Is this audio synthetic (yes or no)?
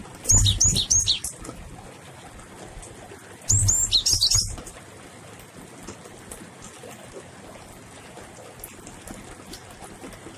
no